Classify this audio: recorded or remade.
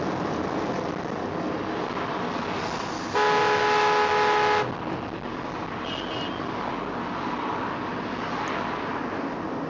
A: recorded